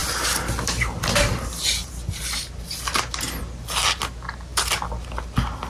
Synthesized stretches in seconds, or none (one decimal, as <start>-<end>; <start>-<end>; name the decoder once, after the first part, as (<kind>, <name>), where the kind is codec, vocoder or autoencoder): none